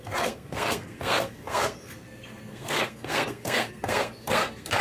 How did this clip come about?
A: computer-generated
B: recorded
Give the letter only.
A